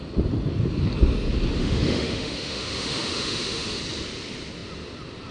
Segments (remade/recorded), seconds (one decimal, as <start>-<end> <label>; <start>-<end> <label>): 0.0-1.6 recorded; 1.6-3.8 remade; 3.8-5.3 recorded